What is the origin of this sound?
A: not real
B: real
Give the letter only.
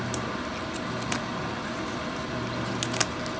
B